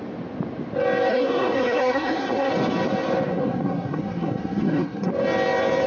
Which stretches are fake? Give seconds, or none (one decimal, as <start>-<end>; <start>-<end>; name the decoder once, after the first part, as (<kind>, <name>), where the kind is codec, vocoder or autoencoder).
1.1-2.5 (codec, SNAC); 3.3-5.1